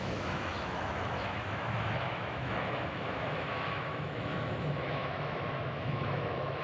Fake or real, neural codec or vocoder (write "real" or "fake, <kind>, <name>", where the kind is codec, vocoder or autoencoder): fake, autoencoder, DAC-VAE